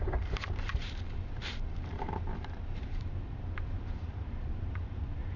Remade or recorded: remade